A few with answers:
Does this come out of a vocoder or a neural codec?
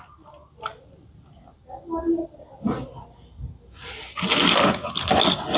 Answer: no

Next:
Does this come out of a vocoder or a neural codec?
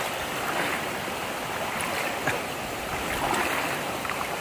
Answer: yes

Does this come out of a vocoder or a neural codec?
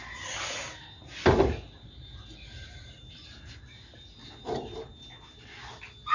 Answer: no